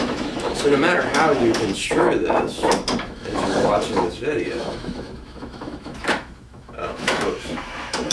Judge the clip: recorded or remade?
remade